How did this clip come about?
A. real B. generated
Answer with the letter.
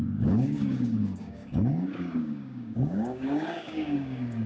B